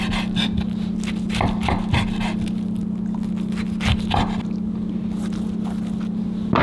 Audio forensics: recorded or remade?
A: recorded